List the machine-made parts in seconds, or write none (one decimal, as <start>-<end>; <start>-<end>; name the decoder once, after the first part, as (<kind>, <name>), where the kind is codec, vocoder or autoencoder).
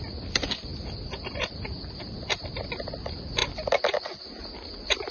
none